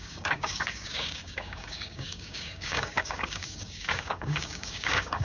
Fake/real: fake